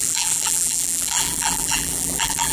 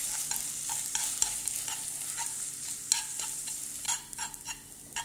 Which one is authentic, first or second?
second